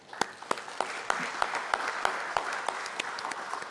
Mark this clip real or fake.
real